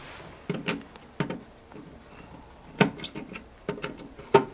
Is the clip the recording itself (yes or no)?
yes